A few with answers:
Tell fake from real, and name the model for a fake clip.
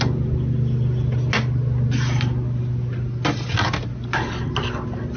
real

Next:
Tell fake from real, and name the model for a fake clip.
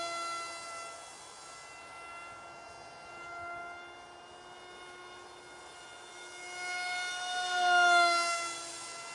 real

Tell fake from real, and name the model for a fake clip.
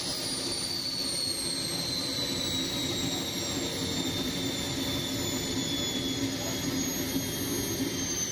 real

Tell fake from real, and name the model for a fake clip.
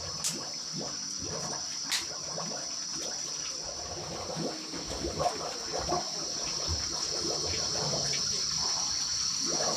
real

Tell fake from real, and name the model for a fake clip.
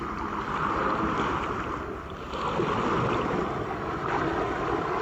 real